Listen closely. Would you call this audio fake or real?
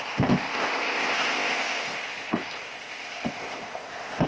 fake